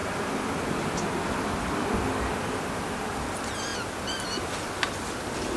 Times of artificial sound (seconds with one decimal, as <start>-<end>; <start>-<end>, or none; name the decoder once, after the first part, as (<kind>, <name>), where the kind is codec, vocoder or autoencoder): 0.0-2.8 (vocoder, BigVGAN v2); 3.7-5.6